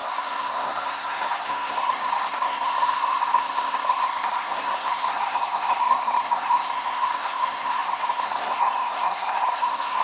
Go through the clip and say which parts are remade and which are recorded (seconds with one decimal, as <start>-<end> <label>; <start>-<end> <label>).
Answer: 0.0-10.0 remade